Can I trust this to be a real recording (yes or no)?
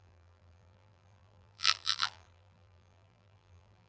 no